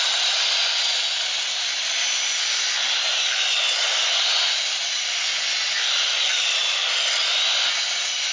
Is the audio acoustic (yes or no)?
yes